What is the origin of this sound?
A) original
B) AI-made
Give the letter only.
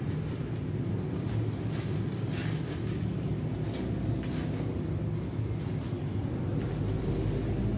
A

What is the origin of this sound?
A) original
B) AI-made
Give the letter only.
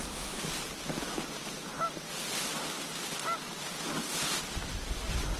A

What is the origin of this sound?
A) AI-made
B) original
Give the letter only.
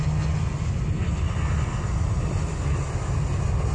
B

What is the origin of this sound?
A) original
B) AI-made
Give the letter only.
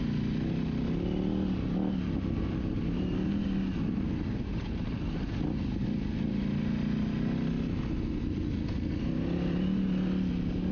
A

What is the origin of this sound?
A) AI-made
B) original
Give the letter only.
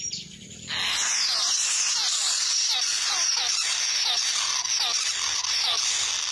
B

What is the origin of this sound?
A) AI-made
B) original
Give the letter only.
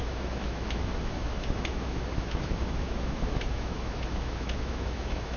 A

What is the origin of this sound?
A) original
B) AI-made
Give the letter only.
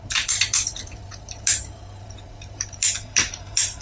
B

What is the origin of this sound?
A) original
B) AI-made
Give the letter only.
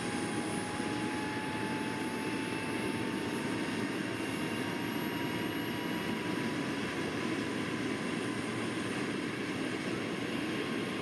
A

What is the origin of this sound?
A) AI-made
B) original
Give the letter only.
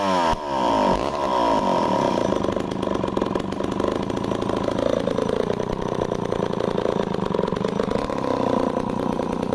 B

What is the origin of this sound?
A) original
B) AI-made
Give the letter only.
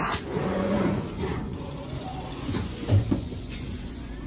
B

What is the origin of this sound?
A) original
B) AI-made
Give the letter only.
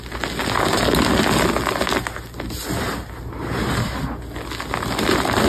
A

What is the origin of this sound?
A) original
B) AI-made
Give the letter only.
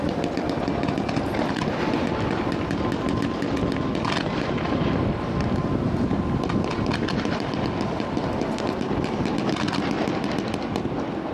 A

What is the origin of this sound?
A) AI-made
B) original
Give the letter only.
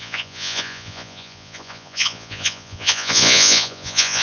A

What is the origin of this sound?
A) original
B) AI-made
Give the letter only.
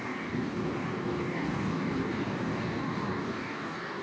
B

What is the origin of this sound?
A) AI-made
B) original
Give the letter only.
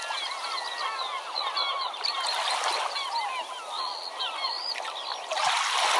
B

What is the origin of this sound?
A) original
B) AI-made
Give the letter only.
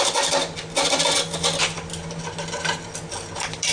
A